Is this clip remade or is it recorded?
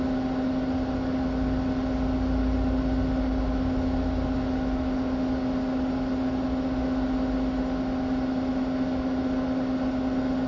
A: recorded